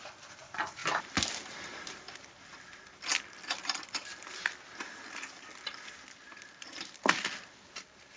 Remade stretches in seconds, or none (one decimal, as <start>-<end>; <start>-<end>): none